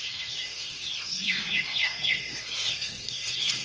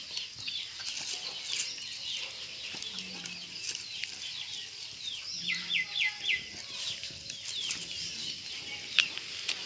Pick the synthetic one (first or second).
first